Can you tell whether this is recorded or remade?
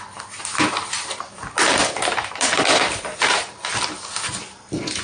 recorded